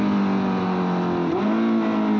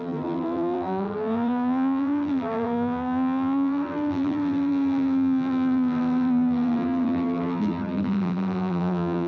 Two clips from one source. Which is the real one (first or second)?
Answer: first